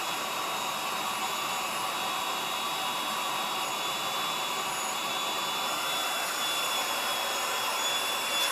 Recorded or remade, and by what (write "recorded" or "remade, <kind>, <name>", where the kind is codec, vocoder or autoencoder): remade, vocoder, BigVGAN v2